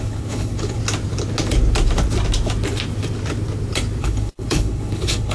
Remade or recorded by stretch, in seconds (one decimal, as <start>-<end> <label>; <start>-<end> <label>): 0.0-0.8 remade; 0.8-4.0 recorded; 4.0-5.3 remade